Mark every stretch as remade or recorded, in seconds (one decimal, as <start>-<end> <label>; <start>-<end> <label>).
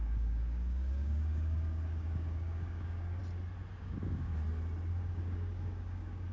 0.0-3.2 remade; 3.2-3.8 recorded; 3.8-4.3 remade; 4.3-4.9 recorded; 4.9-6.3 remade